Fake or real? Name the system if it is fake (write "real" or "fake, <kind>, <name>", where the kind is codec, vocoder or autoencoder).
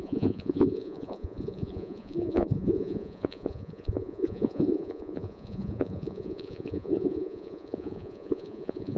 fake, vocoder, Vocos